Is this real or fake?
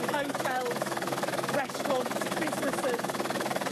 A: fake